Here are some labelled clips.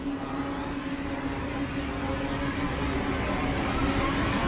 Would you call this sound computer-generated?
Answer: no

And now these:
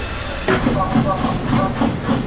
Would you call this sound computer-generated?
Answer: no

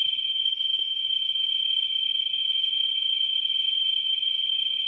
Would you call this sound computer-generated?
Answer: yes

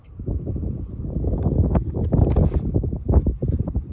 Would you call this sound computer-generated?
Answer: no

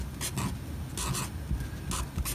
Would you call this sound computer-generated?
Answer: no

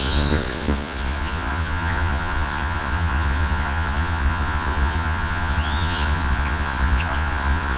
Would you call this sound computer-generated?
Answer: yes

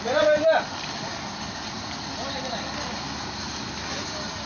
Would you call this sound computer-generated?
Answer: no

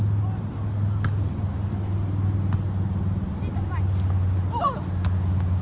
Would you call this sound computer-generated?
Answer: no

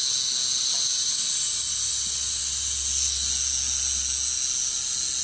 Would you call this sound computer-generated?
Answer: no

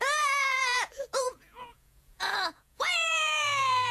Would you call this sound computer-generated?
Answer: yes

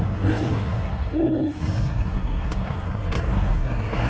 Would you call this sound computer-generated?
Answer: yes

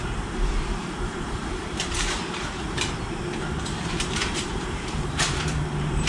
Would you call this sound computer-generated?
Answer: yes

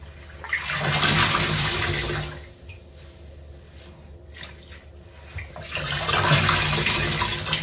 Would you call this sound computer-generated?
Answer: no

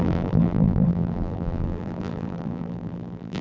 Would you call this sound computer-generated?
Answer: yes